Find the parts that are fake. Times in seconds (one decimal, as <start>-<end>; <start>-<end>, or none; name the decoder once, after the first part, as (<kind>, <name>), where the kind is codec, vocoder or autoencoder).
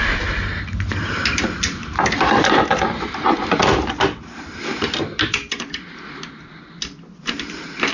none